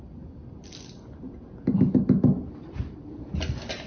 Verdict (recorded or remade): recorded